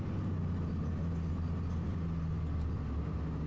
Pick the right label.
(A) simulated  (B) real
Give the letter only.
B